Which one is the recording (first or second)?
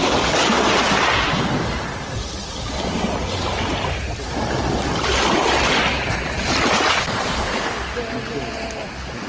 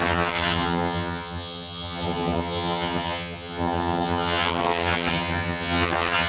first